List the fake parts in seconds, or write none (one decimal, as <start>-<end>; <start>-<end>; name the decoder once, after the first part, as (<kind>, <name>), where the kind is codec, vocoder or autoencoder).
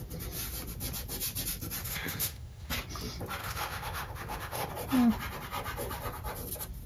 1.8-2.7 (autoencoder, DAC-VAE); 3.4-4.7